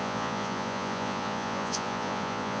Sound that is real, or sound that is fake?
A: fake